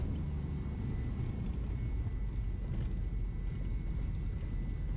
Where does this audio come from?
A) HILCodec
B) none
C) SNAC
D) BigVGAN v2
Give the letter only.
B